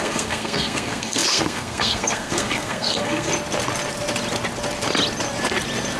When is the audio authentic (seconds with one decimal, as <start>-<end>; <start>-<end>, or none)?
3.3-6.0